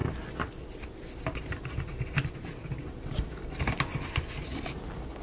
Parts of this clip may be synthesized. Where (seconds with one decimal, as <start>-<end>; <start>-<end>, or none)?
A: none